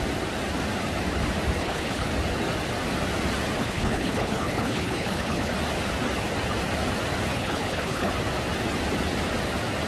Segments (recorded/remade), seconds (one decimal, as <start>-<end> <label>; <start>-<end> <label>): 0.0-1.6 recorded; 1.6-2.1 remade; 2.1-3.6 recorded; 3.6-5.5 remade; 5.5-7.3 recorded; 7.3-8.1 remade; 8.1-9.9 recorded